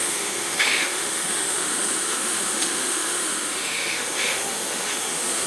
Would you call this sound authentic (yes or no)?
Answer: no